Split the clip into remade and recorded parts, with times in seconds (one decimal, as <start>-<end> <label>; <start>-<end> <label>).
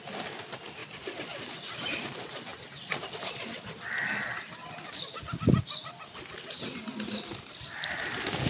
0.0-8.5 recorded